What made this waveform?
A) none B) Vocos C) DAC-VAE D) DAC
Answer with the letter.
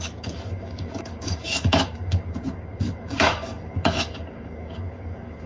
D